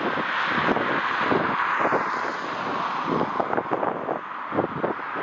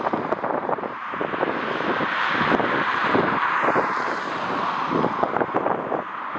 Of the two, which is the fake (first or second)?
second